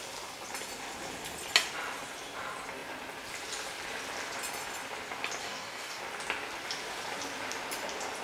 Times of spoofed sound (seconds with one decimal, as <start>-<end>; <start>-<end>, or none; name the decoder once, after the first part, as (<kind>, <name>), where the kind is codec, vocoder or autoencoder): 5.4-6.0 (codec, DAC)